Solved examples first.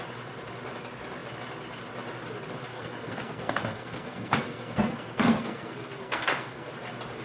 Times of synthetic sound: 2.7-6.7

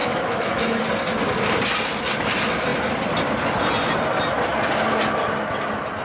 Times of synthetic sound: 0.0-0.8

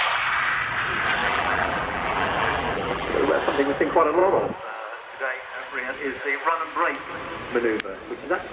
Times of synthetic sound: 1.2-3.3

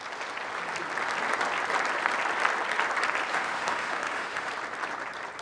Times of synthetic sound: 3.3-4.5

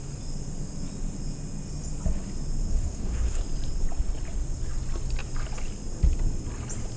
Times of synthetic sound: 2.7-3.4

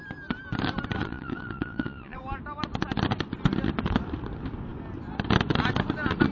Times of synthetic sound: 1.0-2.2